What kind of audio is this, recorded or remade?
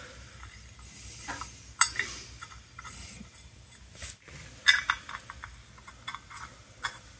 recorded